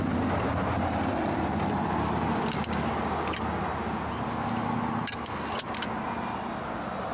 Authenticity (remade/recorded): recorded